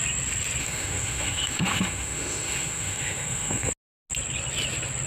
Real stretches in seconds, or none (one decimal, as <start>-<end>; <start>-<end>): 0.0-0.6; 3.7-5.1